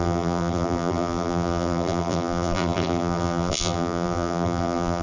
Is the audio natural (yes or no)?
no